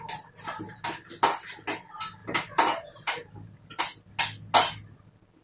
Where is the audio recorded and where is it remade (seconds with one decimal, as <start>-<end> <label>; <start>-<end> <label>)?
0.0-2.2 recorded; 2.2-3.8 remade; 3.8-5.4 recorded